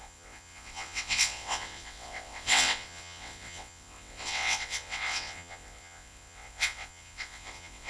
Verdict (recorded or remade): remade